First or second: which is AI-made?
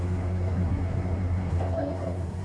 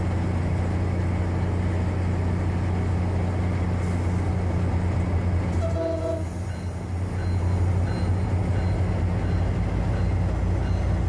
first